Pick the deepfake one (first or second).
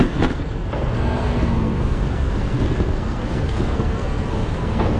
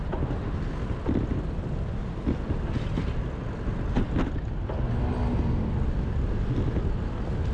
first